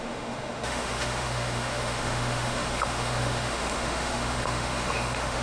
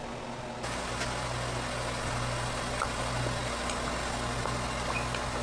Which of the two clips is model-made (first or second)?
first